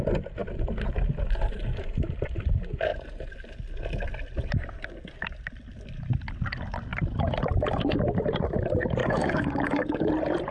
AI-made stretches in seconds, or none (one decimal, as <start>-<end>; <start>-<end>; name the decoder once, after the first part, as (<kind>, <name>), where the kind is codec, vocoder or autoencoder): 9.0-10.1 (codec, DAC)